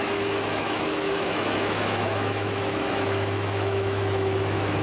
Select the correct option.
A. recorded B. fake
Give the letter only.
B